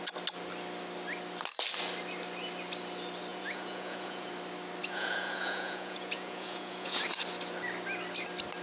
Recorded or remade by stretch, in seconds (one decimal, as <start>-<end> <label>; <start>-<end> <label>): 0.0-3.3 recorded; 3.3-4.3 remade; 4.3-4.8 recorded; 4.8-7.0 remade; 7.0-8.6 recorded